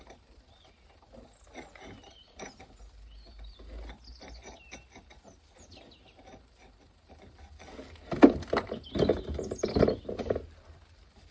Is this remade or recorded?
recorded